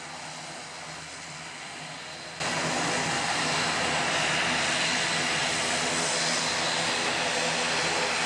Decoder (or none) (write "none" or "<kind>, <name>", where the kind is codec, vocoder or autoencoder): none